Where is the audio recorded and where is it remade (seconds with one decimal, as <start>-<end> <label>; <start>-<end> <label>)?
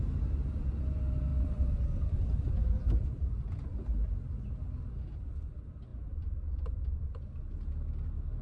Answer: 0.0-1.3 recorded; 1.3-3.9 remade; 3.9-5.9 recorded; 5.9-7.6 remade; 7.6-8.4 recorded